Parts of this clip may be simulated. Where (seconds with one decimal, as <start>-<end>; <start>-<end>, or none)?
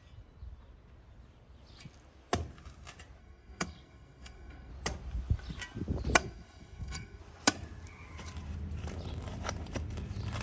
3.2-4.7; 6.2-7.2